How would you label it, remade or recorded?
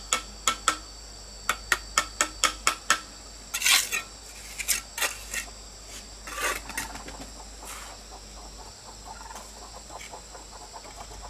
recorded